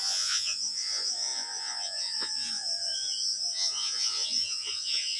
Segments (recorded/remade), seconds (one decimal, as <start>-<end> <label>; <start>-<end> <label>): 0.0-5.2 remade